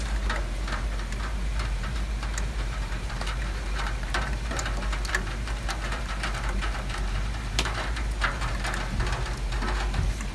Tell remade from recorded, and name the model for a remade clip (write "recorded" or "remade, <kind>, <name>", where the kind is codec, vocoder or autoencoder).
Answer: remade, vocoder, BigVGAN v2